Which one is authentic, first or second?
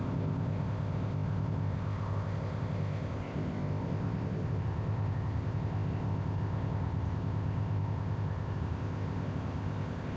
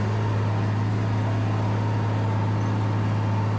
second